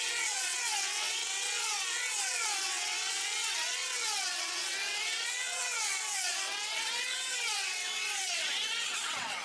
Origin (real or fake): fake